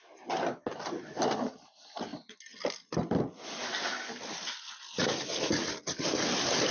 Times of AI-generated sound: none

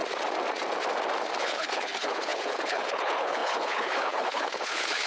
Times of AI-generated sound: 1.4-5.1 (codec, HILCodec)

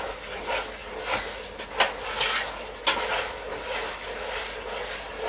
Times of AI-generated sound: none

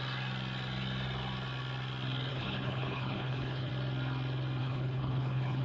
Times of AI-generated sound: 2.3-3.7 (codec, HILCodec); 4.6-5.6

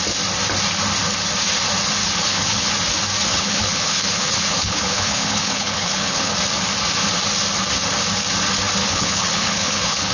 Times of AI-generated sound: 2.0-2.7 (codec, HILCodec); 3.3-6.3; 8.8-10.1

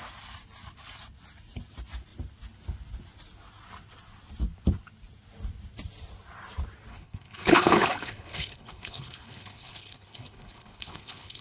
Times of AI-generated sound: 6.9-11.4 (codec, HILCodec)

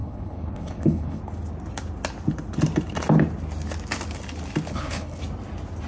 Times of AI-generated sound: 0.0-1.2 (codec, HILCodec); 4.7-5.2